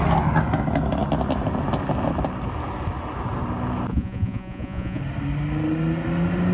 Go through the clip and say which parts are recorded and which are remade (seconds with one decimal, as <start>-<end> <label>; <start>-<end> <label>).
0.0-3.9 recorded; 3.9-5.0 remade; 5.0-6.5 recorded